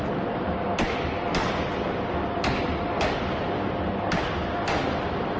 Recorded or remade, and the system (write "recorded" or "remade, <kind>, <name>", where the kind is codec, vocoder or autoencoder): recorded